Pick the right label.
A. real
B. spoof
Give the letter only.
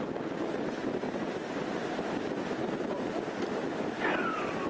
A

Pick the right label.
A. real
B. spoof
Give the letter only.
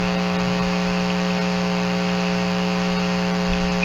A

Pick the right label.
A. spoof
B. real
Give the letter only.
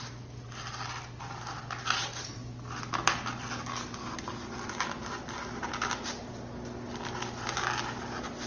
B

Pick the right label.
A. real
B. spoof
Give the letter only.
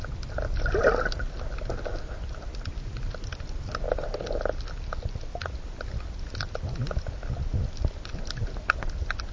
A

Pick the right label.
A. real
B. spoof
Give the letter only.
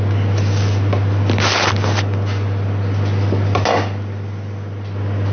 A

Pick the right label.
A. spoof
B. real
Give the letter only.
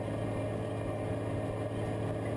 B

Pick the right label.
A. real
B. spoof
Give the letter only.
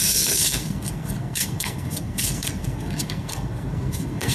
B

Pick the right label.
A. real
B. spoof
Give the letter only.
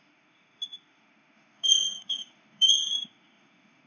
B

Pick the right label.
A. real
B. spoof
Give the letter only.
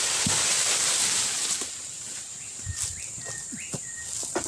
A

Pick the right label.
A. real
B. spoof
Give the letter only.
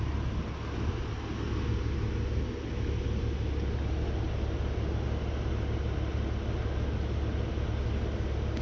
A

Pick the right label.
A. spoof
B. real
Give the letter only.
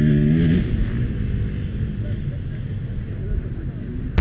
B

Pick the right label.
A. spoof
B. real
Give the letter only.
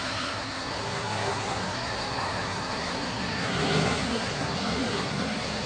A